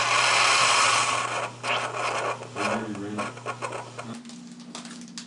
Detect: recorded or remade recorded